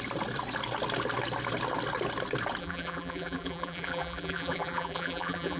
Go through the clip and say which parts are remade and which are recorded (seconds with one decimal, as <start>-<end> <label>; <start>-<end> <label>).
0.0-2.6 recorded; 2.6-5.6 remade